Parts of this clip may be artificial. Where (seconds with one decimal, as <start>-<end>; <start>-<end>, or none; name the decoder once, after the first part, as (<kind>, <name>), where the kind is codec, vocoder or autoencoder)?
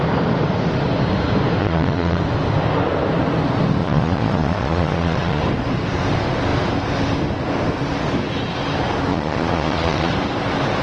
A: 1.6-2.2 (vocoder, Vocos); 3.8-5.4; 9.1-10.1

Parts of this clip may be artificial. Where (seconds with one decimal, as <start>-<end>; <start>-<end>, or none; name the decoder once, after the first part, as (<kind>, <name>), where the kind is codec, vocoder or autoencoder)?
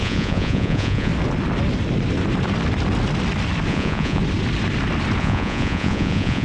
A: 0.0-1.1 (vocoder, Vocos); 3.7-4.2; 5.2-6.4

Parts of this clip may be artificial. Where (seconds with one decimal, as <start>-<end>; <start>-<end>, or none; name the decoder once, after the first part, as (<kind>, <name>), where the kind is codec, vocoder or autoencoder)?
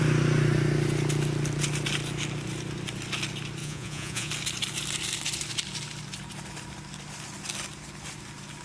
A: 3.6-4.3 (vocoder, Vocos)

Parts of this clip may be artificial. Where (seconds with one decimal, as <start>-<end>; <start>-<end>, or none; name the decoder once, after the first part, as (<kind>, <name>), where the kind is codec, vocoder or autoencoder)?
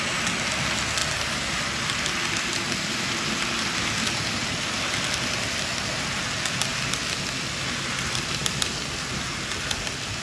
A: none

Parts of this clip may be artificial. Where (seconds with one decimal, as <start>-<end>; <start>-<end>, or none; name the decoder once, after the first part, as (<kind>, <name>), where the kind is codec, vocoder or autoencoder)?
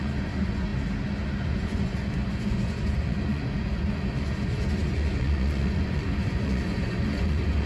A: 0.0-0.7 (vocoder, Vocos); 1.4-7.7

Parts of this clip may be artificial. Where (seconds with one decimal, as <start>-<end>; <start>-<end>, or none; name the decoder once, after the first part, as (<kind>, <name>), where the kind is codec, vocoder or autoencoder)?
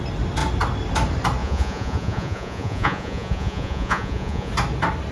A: 1.4-4.5 (vocoder, Vocos)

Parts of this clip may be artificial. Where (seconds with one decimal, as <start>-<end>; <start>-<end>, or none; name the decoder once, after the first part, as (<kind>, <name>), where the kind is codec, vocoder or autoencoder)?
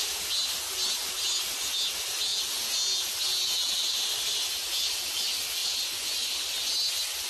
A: 5.6-6.3 (vocoder, Vocos)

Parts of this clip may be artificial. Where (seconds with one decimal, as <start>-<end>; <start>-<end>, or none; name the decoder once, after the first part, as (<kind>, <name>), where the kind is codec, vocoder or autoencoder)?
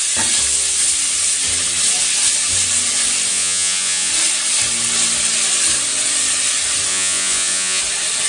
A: 3.3-4.1 (vocoder, Vocos); 6.9-7.8